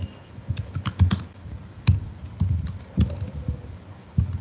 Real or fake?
real